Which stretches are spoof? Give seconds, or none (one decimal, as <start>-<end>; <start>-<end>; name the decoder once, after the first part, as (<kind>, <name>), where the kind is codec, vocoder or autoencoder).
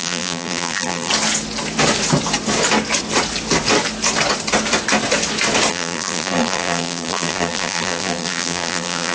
0.0-1.1 (vocoder, BigVGAN v2); 5.7-9.1